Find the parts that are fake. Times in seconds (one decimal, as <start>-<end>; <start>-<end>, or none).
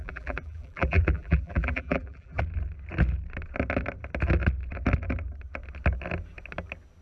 0.0-2.4